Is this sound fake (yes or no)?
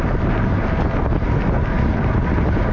no